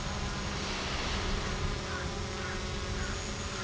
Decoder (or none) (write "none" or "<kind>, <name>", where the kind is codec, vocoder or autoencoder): none